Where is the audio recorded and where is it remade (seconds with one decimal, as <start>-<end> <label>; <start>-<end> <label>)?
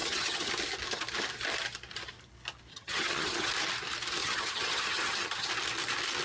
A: 0.0-0.5 remade; 0.5-2.7 recorded; 2.7-3.5 remade; 3.5-4.2 recorded; 4.2-5.5 remade; 5.5-6.2 recorded